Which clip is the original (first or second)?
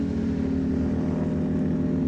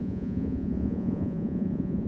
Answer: first